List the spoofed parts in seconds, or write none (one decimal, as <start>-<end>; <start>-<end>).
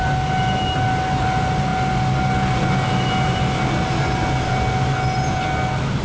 none